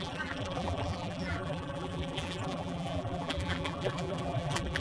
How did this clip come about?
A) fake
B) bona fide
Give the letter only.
A